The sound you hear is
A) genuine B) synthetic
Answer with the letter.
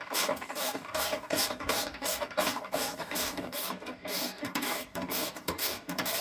B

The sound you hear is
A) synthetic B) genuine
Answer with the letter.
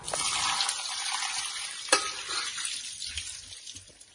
B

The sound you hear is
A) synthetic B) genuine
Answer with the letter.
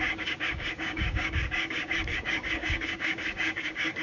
A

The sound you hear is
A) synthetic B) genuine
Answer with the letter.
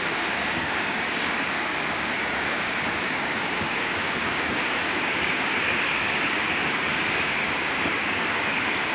A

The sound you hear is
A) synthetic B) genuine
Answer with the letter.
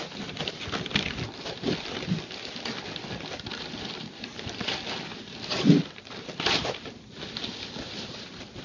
B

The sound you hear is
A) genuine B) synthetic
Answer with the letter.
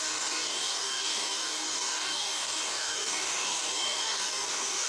B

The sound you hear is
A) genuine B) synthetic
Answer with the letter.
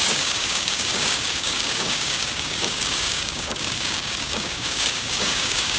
B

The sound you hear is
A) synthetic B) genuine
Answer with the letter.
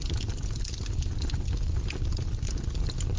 B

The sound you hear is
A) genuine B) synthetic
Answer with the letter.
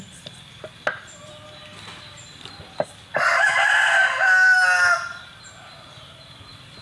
A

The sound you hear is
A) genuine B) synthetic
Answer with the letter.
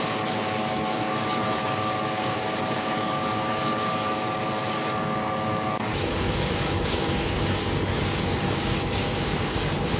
B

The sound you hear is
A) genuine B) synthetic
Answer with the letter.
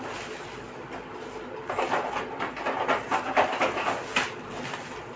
A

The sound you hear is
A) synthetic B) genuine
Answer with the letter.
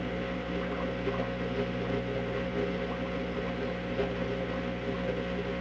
B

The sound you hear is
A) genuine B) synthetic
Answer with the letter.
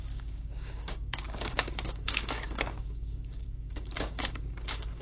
B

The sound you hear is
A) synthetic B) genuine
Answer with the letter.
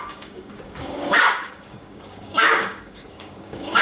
A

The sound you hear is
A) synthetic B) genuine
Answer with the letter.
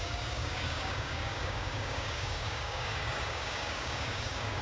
A